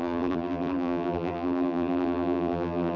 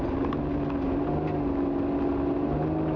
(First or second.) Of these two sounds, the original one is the second